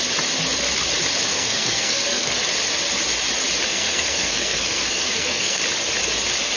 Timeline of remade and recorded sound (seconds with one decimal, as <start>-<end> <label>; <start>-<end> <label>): 0.0-1.3 recorded; 1.3-2.4 remade; 2.4-3.7 recorded; 3.7-5.6 remade; 5.6-6.6 recorded